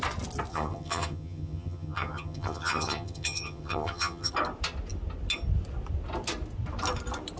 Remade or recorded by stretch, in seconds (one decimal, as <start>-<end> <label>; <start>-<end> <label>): 0.0-0.5 recorded; 0.5-4.3 remade; 4.3-7.4 recorded